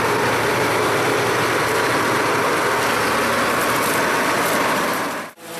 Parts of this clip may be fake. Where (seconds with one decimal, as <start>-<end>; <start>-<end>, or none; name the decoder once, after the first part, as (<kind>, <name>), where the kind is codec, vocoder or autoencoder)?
none